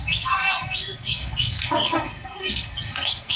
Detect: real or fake fake